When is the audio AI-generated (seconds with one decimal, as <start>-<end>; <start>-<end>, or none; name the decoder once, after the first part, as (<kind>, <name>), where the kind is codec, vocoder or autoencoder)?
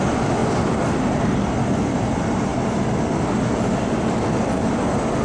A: none